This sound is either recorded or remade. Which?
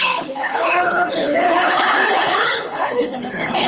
remade